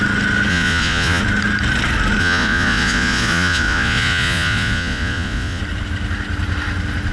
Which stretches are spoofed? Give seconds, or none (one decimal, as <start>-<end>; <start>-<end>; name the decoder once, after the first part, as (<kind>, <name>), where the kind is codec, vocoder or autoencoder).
0.5-1.2 (vocoder, Vocos); 2.2-5.6